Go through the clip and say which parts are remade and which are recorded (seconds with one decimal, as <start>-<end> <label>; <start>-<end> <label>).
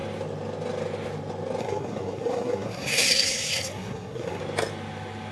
0.0-1.6 recorded; 1.6-4.4 remade; 4.4-5.3 recorded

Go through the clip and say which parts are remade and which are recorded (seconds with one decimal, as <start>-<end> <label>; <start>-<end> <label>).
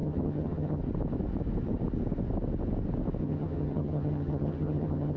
0.0-0.8 remade; 0.8-3.2 recorded; 3.2-5.2 remade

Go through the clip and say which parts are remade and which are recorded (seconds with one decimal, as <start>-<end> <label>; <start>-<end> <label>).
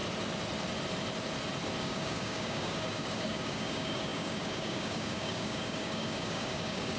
0.0-1.8 recorded; 1.8-7.0 remade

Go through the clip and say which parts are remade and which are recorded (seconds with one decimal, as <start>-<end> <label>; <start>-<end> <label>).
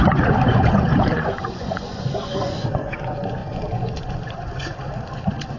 0.0-5.6 remade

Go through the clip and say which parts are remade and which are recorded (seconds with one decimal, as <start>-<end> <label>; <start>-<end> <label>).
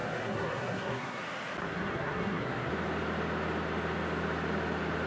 0.0-1.2 remade; 1.2-1.6 recorded; 1.6-2.7 remade; 2.7-5.1 recorded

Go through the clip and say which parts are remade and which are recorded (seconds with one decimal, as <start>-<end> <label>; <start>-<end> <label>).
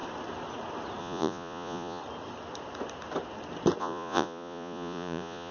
0.0-1.0 recorded; 1.0-2.0 remade; 2.0-3.8 recorded; 3.8-5.5 remade